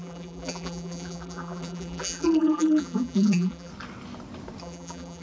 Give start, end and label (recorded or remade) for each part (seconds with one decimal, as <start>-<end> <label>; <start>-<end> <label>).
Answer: 0.0-3.7 remade; 3.7-4.6 recorded; 4.6-5.2 remade